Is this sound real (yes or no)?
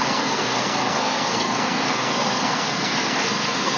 no